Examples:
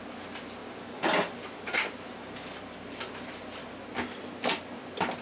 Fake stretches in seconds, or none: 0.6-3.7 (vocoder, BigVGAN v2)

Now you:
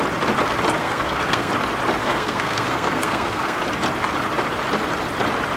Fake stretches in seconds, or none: 0.8-1.5 (codec, SNAC); 2.0-3.6

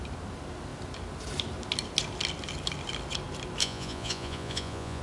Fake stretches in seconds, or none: 3.6-5.0 (vocoder, Vocos)

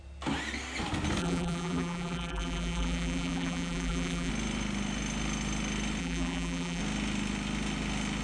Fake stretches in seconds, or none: 1.2-4.3 (vocoder, BigVGAN v2); 6.0-6.8

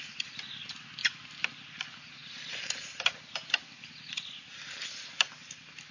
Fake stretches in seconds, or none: none

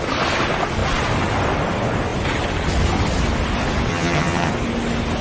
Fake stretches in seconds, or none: 3.9-4.5 (vocoder, HiFi-GAN)

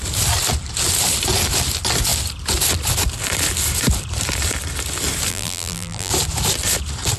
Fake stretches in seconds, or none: 5.3-6.1 (vocoder, BigVGAN v2)